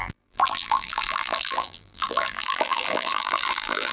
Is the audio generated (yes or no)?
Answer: yes